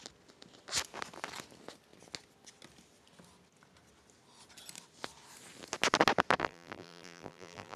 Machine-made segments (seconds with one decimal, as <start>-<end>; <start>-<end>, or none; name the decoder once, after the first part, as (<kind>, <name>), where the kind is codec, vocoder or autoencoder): 6.4-7.8 (vocoder, BigVGAN v2)